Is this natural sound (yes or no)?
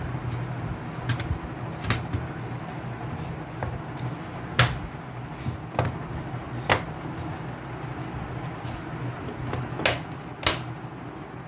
yes